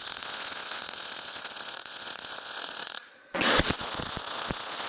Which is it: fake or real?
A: fake